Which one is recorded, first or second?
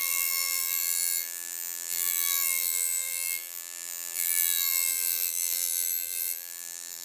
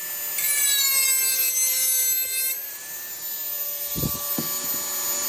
second